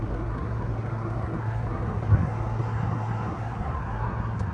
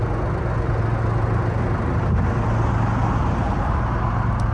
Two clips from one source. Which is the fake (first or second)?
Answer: first